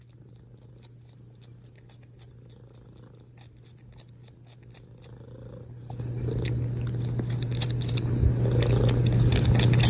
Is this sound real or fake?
real